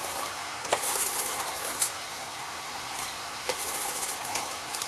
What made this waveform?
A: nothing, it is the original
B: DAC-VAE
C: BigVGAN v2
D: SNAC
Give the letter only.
D